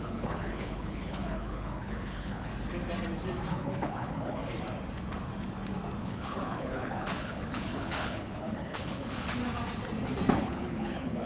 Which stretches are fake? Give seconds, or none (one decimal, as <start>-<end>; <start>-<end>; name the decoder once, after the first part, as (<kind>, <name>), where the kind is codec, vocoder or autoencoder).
0.0-2.5 (codec, HILCodec); 3.5-4.4; 6.0-9.4; 10.3-11.3